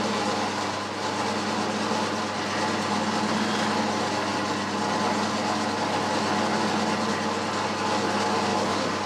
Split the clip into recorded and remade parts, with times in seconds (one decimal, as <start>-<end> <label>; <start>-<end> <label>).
0.0-8.5 recorded; 8.5-9.1 remade